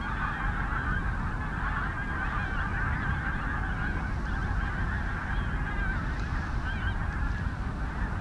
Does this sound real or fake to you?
real